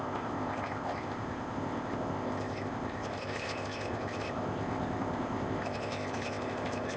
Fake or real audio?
fake